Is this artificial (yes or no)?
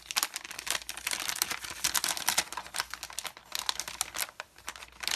no